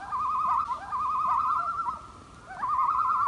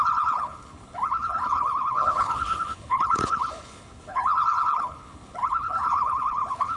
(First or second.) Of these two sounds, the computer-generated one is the second